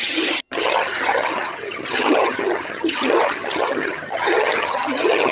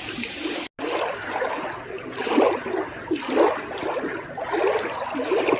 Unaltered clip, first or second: second